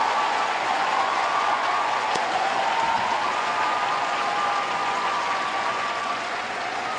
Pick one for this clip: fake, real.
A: fake